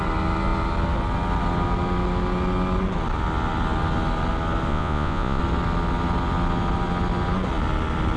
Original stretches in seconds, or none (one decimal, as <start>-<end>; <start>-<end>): 0.0-4.7; 5.4-8.2